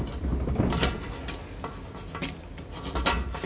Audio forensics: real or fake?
real